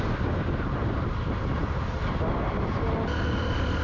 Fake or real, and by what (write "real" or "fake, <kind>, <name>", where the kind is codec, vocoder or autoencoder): real